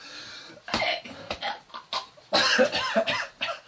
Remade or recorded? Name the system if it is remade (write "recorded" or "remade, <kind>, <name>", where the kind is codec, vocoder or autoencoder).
recorded